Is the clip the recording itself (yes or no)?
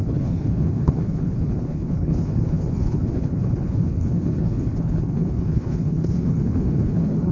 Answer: no